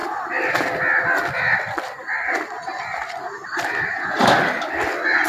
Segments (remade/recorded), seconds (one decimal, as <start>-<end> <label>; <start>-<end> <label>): 0.0-5.3 recorded